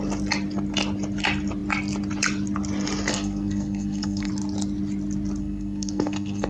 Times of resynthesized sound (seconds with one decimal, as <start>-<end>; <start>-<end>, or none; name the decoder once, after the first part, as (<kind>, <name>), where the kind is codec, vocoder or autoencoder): 3.1-4.3 (codec, SNAC); 5.4-6.5